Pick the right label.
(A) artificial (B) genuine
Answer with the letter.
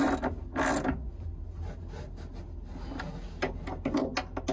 B